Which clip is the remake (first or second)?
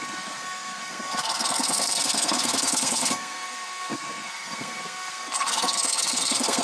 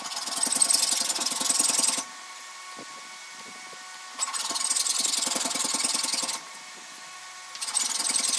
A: first